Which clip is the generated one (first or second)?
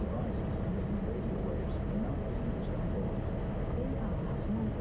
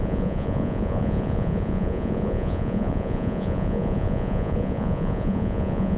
second